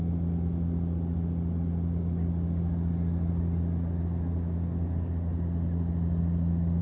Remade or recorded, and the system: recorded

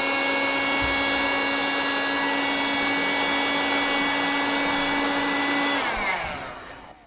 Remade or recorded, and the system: recorded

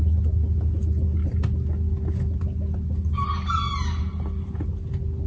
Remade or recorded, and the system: recorded